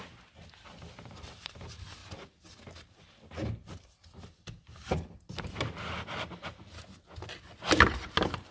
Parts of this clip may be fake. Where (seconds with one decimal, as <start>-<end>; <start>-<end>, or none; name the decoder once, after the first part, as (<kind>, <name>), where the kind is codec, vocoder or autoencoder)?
none